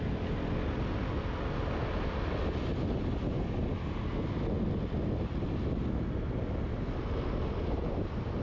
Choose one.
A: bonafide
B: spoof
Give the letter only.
A